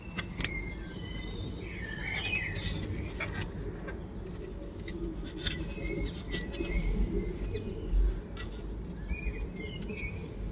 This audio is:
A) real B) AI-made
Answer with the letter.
A